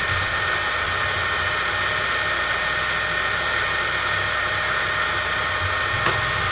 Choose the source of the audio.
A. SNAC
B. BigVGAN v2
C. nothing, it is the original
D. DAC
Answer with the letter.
C